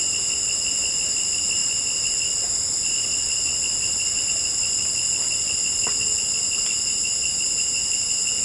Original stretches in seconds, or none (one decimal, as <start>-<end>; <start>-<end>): 0.0-1.6; 6.2-8.4